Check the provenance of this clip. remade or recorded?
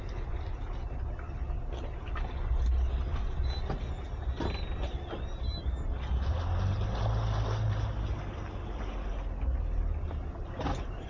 recorded